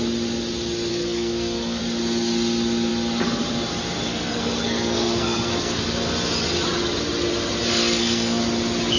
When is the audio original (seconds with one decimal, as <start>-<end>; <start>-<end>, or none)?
0.0-0.9; 1.8-4.1; 5.8-7.7; 8.4-9.0